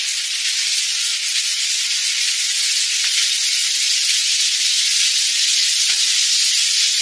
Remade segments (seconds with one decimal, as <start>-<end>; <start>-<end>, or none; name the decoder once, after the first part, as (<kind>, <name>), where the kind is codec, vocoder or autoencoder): none